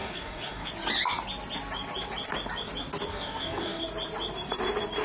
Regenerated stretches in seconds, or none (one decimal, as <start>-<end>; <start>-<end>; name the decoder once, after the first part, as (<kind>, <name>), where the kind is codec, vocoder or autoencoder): 0.0-0.7 (codec, DAC); 3.1-3.8